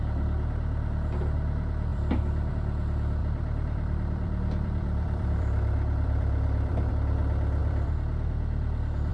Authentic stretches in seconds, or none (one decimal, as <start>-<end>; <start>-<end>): 0.0-1.9; 2.5-3.2; 6.9-7.6